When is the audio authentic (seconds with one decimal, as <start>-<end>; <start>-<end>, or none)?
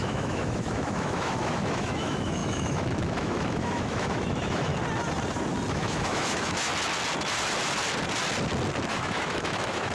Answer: 4.7-5.7; 6.7-8.9